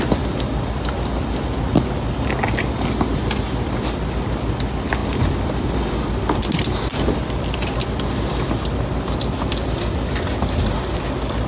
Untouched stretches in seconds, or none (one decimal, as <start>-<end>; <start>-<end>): 0.0-11.5